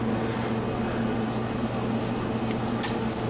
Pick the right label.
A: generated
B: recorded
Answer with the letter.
B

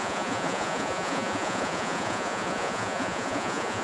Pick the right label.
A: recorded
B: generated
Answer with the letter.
B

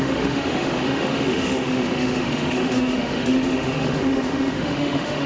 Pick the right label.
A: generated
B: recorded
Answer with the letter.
A